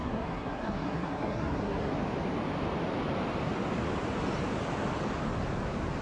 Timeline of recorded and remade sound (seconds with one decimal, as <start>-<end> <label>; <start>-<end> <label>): 0.0-1.9 remade; 1.9-6.0 recorded